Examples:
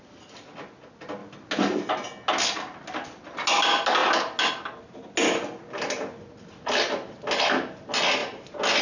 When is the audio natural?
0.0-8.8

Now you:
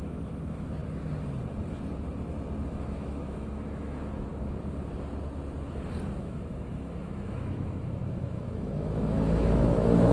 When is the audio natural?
0.8-2.7; 4.3-6.2

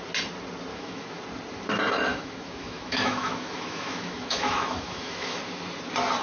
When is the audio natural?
0.0-0.7; 1.2-2.1; 5.4-6.2

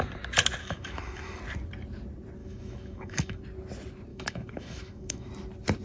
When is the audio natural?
0.0-0.6; 1.4-2.4; 3.4-4.1; 5.3-5.8

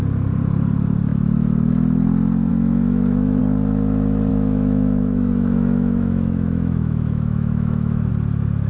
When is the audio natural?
0.0-2.5; 3.4-4.3; 8.1-8.7

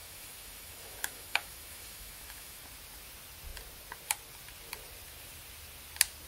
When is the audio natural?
2.6-6.3